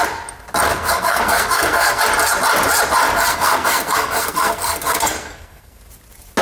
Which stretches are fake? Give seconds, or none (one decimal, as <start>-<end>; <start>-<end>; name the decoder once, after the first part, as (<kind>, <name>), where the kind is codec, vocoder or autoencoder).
0.7-2.0 (codec, SNAC); 3.3-5.8